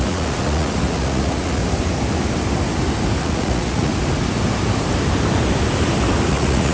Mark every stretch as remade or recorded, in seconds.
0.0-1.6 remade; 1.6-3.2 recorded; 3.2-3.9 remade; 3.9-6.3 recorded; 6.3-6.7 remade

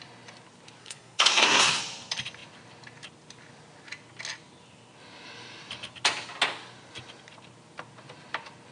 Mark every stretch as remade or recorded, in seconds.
0.0-0.8 recorded; 0.8-1.8 remade; 1.8-8.7 recorded

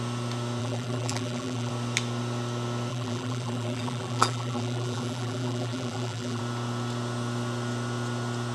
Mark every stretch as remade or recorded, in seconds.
0.0-0.6 recorded; 0.6-1.7 remade; 1.7-2.9 recorded; 2.9-6.4 remade; 6.4-8.5 recorded

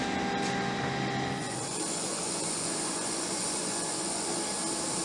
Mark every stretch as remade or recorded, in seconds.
0.0-1.4 recorded; 1.4-4.4 remade; 4.4-5.0 recorded

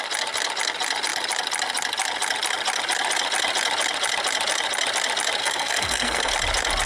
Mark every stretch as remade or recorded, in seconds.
0.0-5.4 recorded; 5.4-6.3 remade; 6.3-6.9 recorded

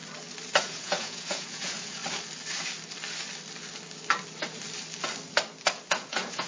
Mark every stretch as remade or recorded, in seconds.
0.0-0.6 recorded; 0.6-2.0 remade; 2.0-5.9 recorded; 5.9-6.5 remade

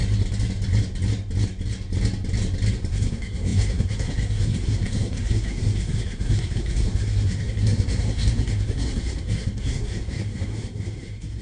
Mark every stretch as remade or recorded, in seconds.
0.0-2.9 recorded; 2.9-11.4 remade